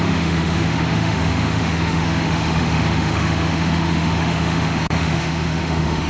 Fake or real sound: fake